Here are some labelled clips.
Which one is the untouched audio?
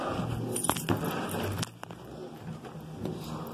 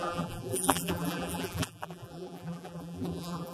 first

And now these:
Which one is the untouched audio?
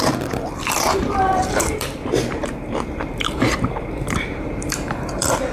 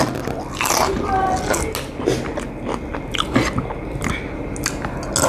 second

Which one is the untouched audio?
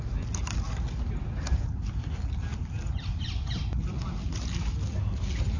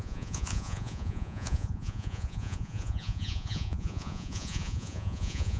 first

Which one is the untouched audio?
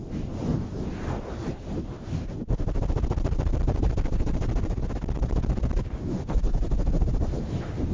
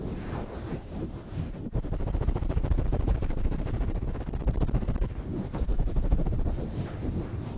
first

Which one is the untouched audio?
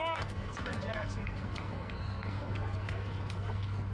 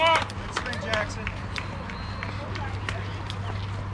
second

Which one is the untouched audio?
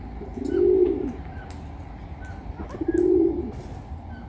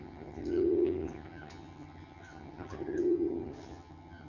first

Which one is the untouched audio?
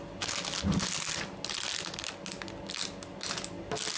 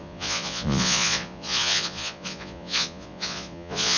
first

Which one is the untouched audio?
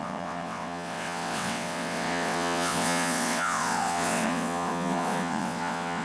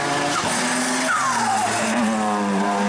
second